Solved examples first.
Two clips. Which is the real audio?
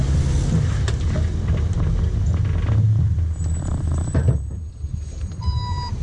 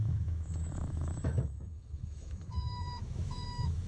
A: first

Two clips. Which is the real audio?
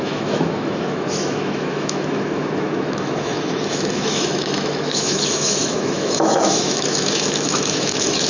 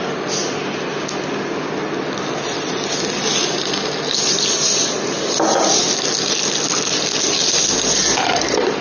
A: second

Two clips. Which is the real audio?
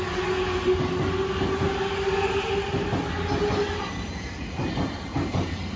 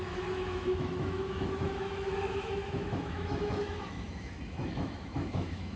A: first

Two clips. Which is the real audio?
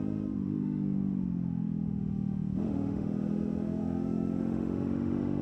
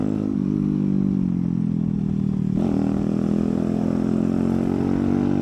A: second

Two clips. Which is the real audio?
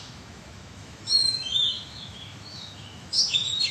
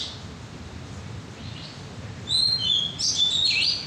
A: second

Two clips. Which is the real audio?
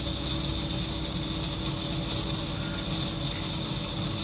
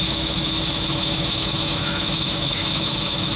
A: first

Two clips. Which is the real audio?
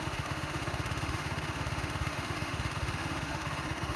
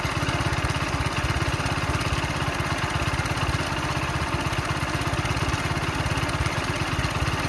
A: second